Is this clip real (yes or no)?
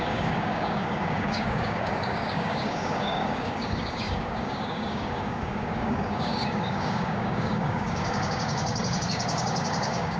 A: no